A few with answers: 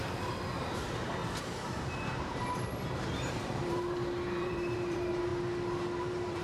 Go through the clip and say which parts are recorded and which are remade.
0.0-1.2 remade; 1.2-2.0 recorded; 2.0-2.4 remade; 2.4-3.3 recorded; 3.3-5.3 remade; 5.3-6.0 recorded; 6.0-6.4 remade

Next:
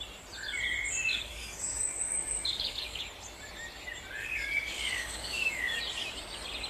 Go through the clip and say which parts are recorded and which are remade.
0.0-1.1 recorded; 1.1-3.0 remade; 3.0-4.2 recorded; 4.2-5.8 remade; 5.8-6.7 recorded

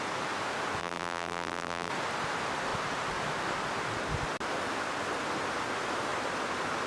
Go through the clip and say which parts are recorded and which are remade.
0.0-0.8 recorded; 0.8-1.9 remade; 1.9-6.9 recorded

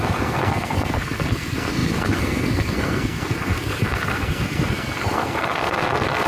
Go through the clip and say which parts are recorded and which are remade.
0.0-6.3 remade